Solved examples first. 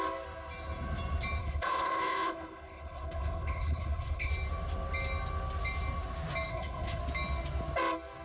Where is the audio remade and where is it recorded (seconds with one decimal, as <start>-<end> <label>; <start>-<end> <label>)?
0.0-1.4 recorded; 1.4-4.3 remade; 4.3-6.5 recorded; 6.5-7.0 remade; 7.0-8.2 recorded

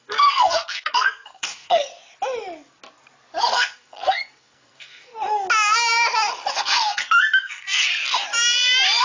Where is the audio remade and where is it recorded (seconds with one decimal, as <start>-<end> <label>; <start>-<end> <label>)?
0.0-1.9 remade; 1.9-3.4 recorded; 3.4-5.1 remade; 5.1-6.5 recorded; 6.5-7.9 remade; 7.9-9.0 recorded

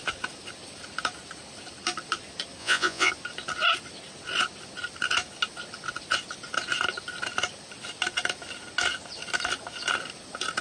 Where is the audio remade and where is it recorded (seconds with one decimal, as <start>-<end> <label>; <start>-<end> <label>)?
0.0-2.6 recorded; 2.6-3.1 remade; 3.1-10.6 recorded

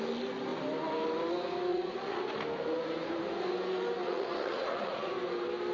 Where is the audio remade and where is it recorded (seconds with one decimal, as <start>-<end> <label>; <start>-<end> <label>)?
0.0-1.7 recorded; 1.7-2.2 remade; 2.2-4.0 recorded; 4.0-5.1 remade; 5.1-5.7 recorded